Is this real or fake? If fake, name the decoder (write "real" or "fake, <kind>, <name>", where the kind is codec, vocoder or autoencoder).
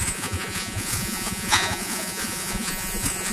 fake, vocoder, Vocos